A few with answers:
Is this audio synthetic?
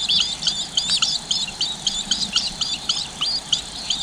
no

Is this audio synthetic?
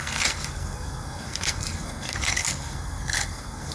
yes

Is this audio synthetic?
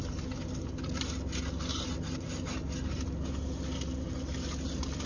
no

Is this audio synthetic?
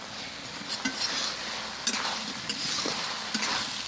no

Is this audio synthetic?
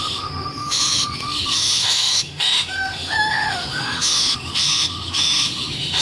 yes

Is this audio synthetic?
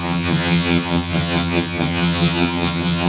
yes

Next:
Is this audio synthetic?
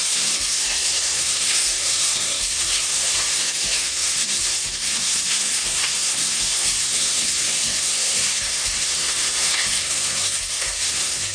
yes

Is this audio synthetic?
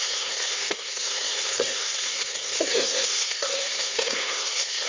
yes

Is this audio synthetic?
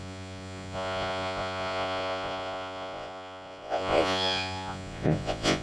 yes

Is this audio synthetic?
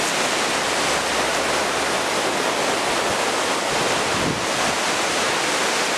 no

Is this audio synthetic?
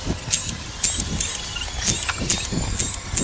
no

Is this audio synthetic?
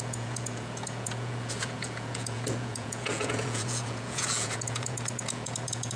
yes